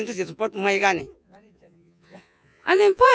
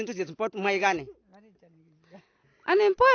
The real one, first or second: second